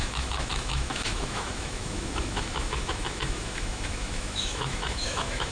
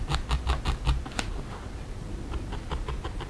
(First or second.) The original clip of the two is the second